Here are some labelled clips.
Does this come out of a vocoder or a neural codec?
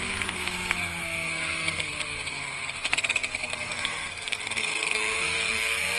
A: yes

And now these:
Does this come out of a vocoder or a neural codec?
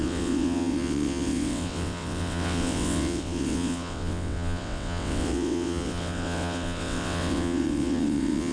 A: yes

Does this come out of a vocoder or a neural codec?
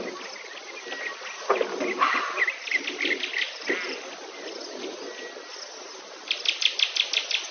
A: no